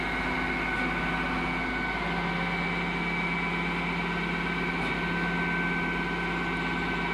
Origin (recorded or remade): recorded